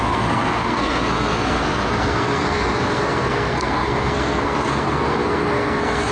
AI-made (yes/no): yes